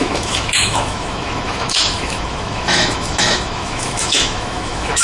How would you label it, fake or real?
fake